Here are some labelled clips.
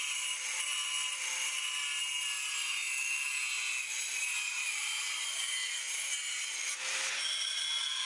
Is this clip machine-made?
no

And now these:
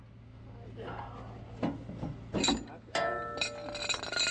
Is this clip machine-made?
no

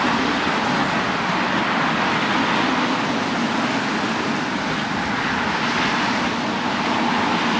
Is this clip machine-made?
no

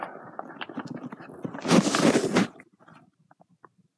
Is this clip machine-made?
no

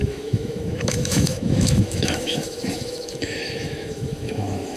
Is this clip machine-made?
yes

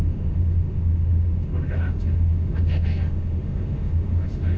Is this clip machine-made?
yes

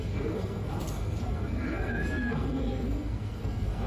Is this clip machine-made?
yes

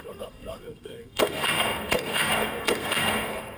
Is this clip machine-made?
yes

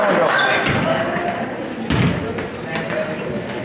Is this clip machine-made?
no